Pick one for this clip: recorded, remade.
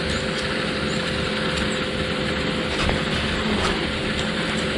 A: recorded